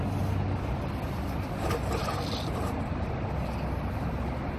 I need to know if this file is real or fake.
real